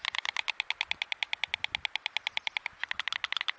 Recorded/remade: recorded